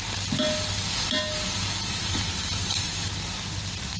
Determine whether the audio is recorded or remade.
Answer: recorded